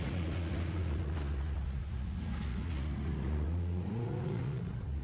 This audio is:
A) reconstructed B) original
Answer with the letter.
A